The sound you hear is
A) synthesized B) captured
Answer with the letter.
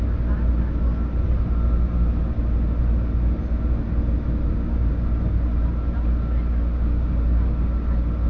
B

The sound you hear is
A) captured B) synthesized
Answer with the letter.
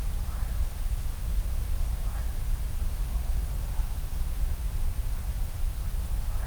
A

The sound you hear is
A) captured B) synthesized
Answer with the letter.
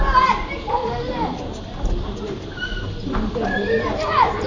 A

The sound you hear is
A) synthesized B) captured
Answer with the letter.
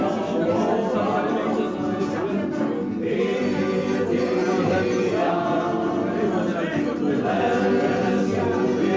B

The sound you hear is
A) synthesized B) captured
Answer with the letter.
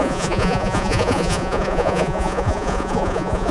A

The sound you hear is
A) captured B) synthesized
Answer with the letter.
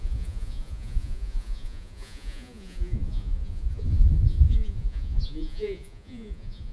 B